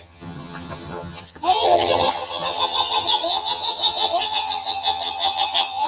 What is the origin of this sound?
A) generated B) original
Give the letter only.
A